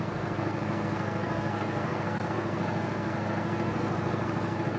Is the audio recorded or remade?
remade